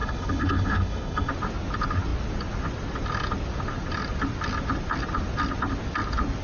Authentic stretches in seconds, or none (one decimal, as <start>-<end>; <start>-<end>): 1.3-6.4